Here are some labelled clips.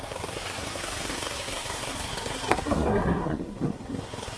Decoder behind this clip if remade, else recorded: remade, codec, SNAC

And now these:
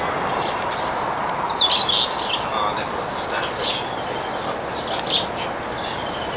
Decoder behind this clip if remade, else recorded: recorded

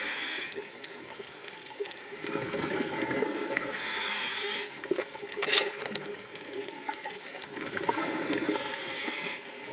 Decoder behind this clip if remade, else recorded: remade, codec, SNAC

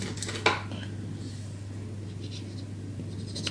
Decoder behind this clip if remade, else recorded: recorded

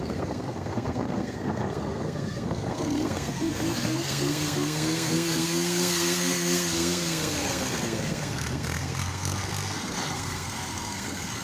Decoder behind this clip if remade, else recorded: remade, codec, SNAC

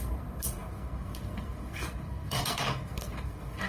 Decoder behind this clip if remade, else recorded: remade, codec, SNAC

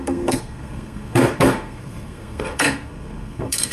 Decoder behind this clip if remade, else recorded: remade, codec, SNAC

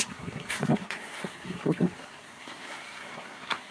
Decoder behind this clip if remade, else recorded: remade, codec, SNAC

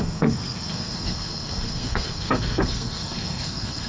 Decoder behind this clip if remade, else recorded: remade, codec, SNAC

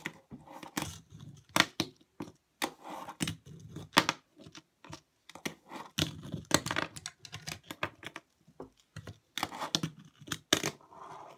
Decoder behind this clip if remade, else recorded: recorded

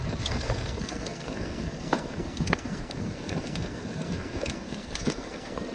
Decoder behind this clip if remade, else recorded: remade, codec, SNAC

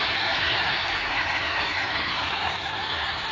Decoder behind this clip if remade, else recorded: remade, codec, SNAC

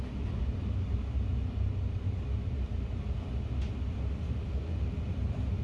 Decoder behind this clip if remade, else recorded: recorded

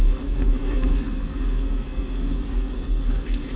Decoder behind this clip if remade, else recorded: remade, codec, SNAC